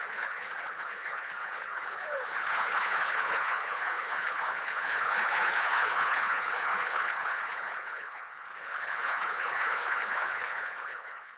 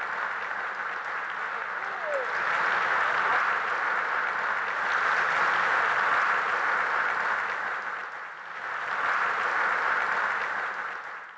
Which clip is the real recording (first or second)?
second